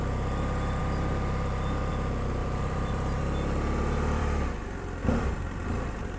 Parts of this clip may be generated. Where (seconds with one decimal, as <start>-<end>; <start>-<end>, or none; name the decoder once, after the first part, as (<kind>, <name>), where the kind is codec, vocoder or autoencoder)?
2.4-3.2 (vocoder, BigVGAN v2); 4.2-5.3